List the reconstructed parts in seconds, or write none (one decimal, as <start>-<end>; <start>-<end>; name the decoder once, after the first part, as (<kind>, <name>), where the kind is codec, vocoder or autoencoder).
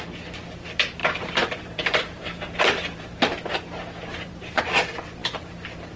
1.0-4.6 (vocoder, BigVGAN v2)